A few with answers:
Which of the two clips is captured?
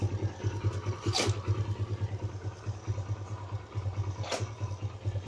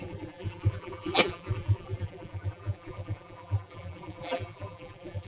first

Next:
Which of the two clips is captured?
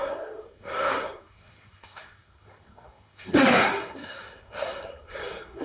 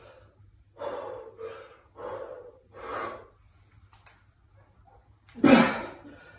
second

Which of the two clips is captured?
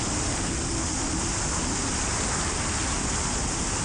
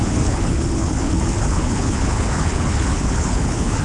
first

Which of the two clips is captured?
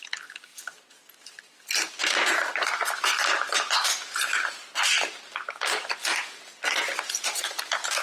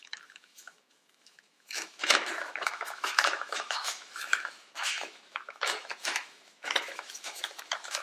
first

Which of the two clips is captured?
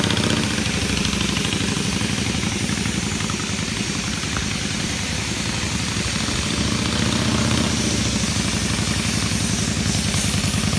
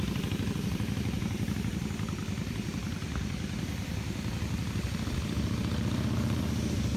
first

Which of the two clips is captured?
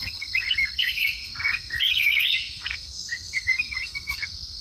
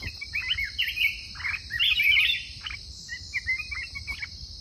second